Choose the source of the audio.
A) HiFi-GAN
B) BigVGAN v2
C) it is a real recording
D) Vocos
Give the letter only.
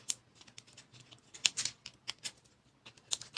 C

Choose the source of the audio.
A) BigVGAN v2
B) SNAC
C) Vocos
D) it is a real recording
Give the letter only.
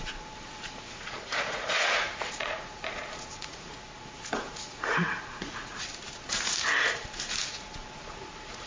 C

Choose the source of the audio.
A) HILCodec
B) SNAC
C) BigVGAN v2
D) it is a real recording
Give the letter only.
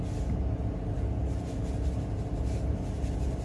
D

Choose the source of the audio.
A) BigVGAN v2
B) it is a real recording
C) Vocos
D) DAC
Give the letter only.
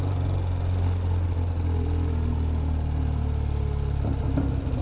B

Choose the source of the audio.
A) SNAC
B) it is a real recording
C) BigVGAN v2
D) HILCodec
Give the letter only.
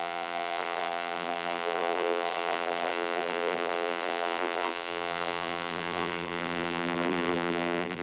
C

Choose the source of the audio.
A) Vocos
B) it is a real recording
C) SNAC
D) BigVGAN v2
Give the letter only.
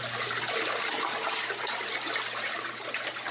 B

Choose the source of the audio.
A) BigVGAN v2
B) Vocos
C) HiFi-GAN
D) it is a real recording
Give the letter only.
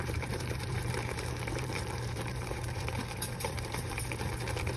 A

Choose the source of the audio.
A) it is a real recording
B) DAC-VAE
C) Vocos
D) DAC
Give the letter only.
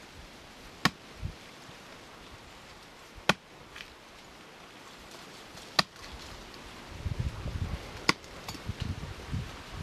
A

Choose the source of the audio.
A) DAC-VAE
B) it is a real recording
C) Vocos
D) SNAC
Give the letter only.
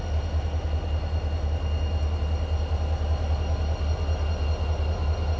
B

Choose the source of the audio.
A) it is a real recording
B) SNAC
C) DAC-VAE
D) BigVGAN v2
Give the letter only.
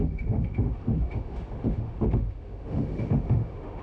C